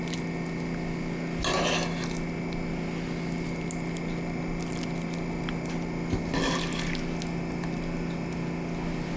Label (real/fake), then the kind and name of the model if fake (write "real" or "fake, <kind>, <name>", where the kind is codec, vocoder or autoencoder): real